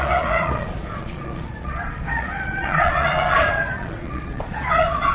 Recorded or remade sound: remade